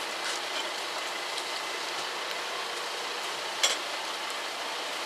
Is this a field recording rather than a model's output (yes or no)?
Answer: yes